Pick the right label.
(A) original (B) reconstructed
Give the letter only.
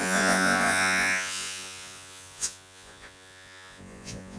B